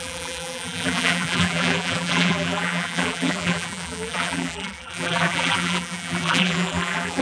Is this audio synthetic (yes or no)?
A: yes